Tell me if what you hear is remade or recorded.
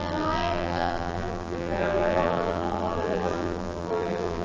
remade